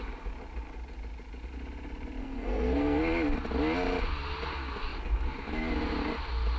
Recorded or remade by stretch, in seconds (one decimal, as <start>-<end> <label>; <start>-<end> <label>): 0.0-2.2 recorded; 2.2-3.0 remade; 3.0-6.6 recorded

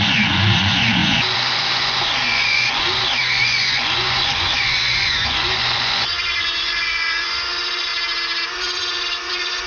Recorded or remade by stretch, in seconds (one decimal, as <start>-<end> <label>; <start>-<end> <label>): 0.0-7.9 remade; 7.9-8.5 recorded; 8.5-9.7 remade

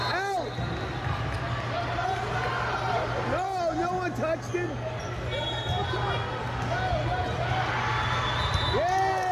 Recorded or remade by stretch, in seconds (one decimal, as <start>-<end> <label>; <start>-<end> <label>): 0.0-9.3 recorded

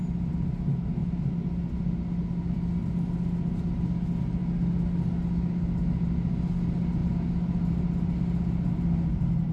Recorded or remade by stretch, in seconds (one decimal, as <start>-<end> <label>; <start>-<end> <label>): 0.0-9.5 recorded

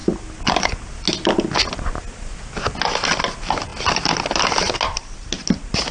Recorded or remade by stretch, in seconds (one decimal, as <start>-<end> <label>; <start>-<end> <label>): 0.0-3.7 recorded; 3.7-4.7 remade; 4.7-5.9 recorded

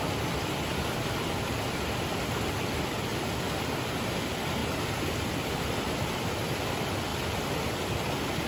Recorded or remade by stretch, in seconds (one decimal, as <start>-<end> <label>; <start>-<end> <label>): 0.0-3.1 remade; 3.1-3.6 recorded; 3.6-4.6 remade; 4.6-5.7 recorded; 5.7-8.5 remade

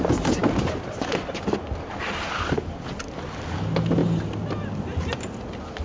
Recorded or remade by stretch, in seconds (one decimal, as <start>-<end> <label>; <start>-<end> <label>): 0.0-5.8 recorded